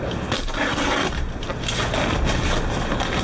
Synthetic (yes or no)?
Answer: no